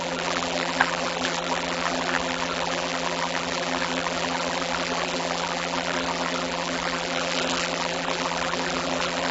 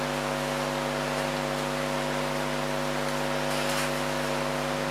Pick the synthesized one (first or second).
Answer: first